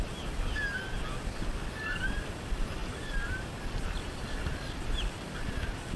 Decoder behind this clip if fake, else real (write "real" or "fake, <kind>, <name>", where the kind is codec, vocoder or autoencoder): real